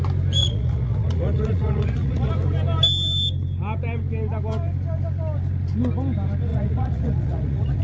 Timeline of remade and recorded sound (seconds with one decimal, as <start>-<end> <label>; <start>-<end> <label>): 0.0-0.4 recorded; 0.4-2.3 remade; 2.3-6.5 recorded; 6.5-7.8 remade